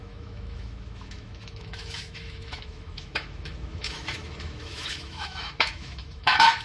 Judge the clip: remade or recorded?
remade